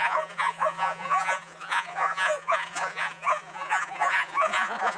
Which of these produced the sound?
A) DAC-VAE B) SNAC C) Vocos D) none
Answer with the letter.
C